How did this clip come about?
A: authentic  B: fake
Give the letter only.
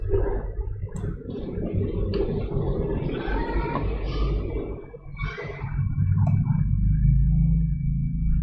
A